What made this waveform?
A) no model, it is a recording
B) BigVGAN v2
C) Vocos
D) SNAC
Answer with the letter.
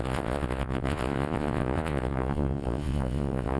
C